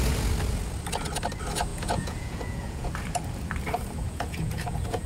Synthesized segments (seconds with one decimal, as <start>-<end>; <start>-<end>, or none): 1.7-2.9; 4.0-5.1